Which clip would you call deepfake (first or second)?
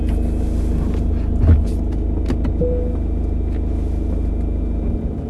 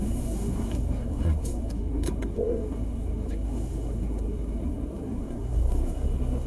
second